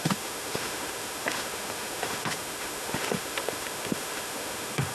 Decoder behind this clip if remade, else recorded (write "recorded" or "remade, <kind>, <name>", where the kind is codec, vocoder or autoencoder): remade, autoencoder, DAC-VAE